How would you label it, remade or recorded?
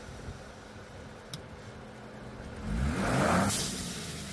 recorded